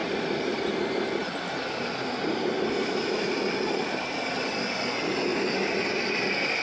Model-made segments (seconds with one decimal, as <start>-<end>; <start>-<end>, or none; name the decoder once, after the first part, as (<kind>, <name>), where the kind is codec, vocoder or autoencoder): 0.0-0.7 (vocoder, BigVGAN v2); 1.2-4.6; 5.3-6.6